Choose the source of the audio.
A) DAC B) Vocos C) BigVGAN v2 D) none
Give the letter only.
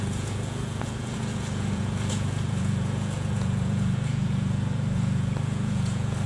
B